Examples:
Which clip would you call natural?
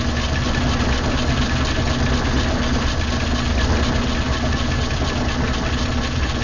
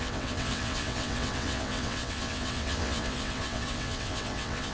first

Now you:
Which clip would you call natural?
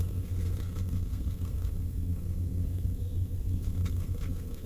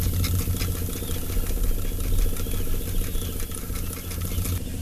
second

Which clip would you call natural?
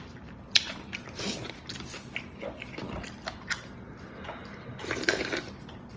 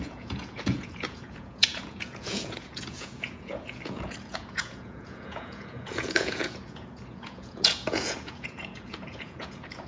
first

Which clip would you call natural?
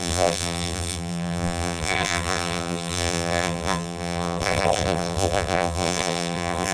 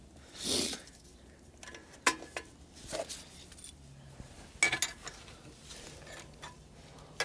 second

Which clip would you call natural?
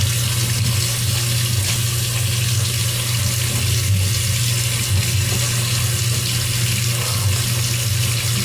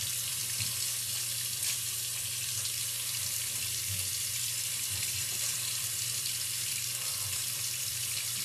first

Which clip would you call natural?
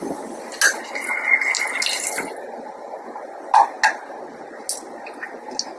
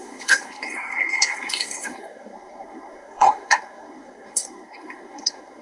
first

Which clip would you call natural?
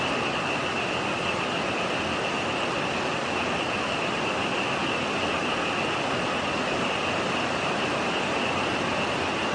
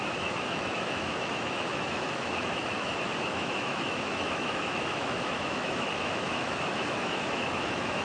first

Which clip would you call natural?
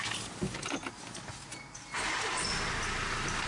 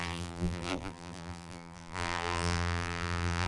first